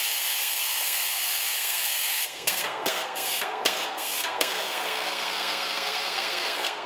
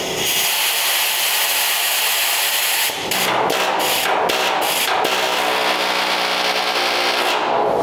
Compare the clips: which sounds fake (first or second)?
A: first